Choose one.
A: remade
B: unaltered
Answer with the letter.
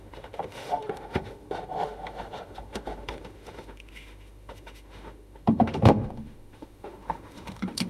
A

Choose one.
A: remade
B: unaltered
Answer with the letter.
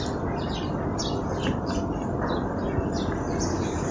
B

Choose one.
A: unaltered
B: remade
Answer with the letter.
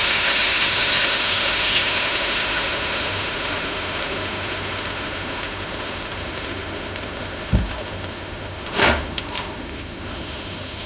B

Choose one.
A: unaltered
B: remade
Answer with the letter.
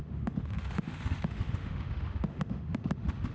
B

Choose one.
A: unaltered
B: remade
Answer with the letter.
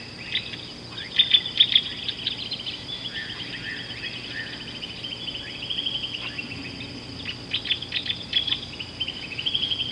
A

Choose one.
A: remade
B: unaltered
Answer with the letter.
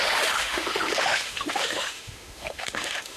A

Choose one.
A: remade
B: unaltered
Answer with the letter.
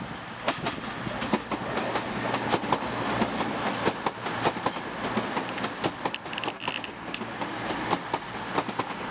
B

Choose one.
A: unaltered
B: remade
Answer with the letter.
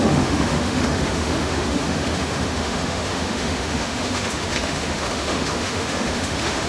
B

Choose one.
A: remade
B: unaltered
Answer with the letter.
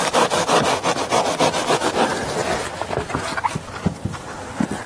B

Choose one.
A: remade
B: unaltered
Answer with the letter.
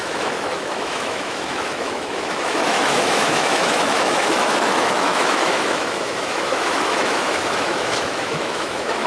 A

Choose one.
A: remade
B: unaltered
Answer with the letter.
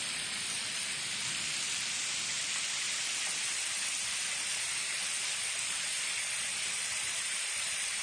B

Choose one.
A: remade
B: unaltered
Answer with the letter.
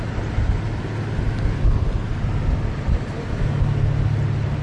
B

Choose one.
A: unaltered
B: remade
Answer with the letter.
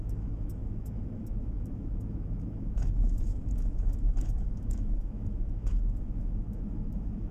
B